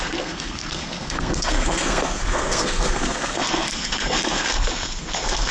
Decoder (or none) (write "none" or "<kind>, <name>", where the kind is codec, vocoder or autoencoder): codec, SNAC